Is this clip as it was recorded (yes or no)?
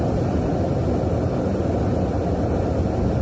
yes